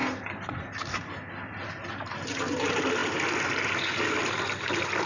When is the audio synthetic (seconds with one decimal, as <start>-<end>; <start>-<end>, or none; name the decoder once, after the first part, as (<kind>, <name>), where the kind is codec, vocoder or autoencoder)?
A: none